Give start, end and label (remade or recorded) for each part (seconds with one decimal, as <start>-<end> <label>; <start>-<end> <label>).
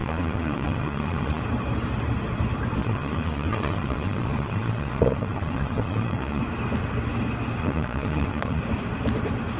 0.0-1.4 remade; 1.4-2.8 recorded; 2.8-6.4 remade; 6.4-7.6 recorded; 7.6-8.6 remade; 8.6-9.6 recorded